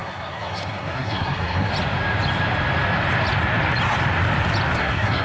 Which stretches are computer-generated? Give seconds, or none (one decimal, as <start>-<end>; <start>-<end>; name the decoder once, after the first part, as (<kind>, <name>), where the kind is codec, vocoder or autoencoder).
0.0-1.7 (codec, SNAC); 4.8-5.2